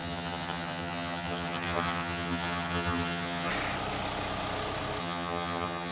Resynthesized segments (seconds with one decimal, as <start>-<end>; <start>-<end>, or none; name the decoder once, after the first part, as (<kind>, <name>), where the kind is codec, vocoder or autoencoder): 0.0-3.5 (vocoder, HiFi-GAN); 5.0-5.9

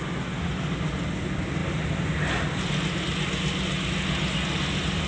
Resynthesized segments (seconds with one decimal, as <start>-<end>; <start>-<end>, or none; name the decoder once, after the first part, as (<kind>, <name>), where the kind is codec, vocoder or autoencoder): none